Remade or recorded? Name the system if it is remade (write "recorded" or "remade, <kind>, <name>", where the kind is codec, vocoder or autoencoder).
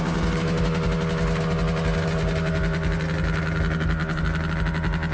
recorded